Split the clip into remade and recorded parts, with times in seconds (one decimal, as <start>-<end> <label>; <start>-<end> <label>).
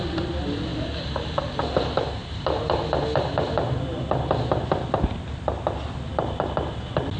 0.0-7.2 recorded